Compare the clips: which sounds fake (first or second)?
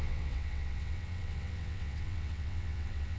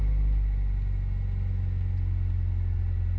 first